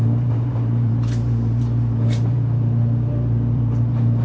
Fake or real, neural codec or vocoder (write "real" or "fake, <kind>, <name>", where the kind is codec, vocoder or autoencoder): fake, vocoder, BigVGAN v2